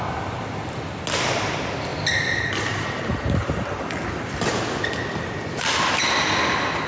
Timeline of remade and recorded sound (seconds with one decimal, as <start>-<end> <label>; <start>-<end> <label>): 0.0-6.9 recorded